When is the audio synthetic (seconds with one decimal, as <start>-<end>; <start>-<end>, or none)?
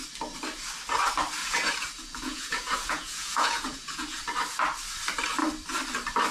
1.4-4.2